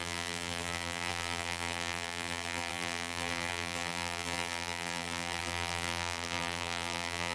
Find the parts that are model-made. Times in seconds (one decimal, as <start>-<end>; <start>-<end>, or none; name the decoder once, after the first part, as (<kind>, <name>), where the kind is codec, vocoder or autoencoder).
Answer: 0.0-7.3 (vocoder, BigVGAN v2)